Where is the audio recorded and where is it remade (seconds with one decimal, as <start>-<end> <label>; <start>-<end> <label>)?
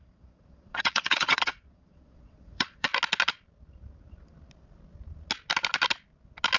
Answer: 0.0-2.9 remade; 2.9-6.6 recorded